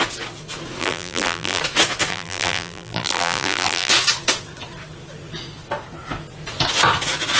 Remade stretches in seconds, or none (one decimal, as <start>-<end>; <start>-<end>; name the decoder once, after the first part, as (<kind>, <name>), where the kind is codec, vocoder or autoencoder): 0.8-1.6 (vocoder, BigVGAN v2); 2.1-3.9